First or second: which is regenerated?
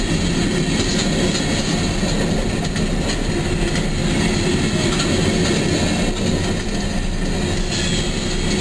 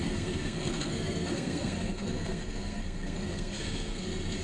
second